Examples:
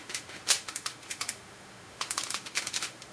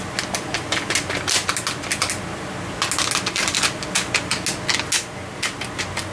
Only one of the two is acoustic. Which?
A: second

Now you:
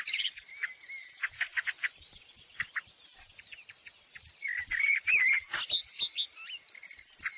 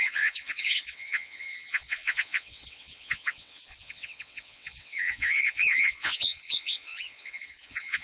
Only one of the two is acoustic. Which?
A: first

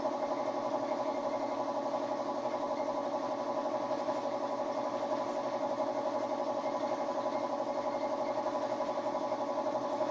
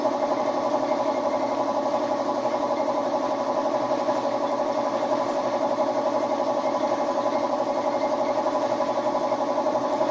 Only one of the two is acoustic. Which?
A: first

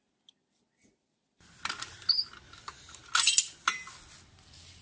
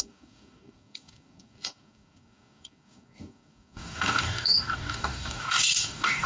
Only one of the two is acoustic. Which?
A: first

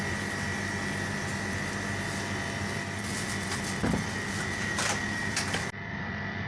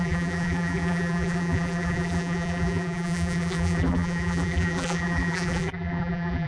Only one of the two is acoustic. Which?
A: first